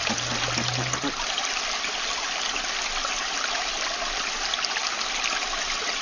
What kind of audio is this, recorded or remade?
recorded